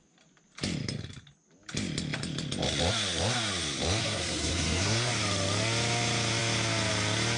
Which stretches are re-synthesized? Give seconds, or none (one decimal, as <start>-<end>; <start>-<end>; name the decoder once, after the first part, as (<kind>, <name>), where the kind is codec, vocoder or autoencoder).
4.0-5.1 (codec, SNAC)